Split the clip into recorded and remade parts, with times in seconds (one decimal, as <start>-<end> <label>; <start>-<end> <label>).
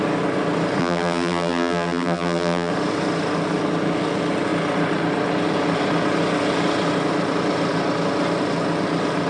0.0-0.8 recorded; 0.8-2.7 remade; 2.7-9.3 recorded